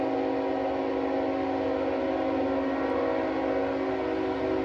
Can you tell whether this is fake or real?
real